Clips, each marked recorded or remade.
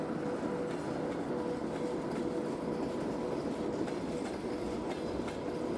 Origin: recorded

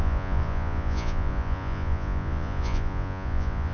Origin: remade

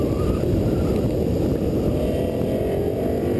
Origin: recorded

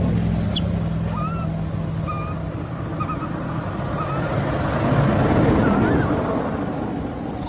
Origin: recorded